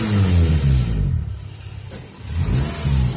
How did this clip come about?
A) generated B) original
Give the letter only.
B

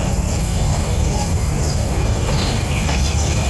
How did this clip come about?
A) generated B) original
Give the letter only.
A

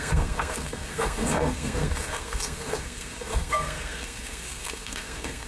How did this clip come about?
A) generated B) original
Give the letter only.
A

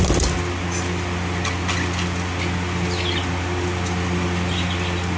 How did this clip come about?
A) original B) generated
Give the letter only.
A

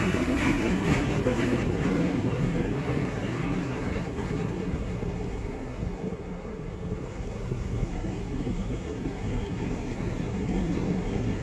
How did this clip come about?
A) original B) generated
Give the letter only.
B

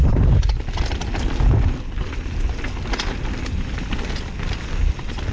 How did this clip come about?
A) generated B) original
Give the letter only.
B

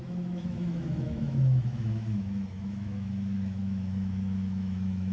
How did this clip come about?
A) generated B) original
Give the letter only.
A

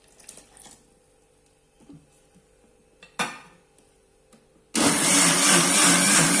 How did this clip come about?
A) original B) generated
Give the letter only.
A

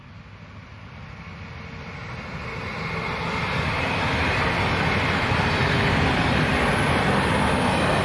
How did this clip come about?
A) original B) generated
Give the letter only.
A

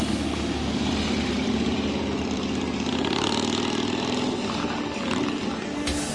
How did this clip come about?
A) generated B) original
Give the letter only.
B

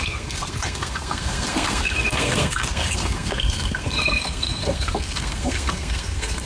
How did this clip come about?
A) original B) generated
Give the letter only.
B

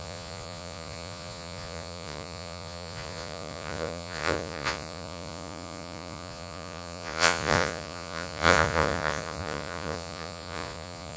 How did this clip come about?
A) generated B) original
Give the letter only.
A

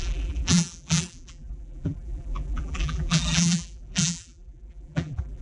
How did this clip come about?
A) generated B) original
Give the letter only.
A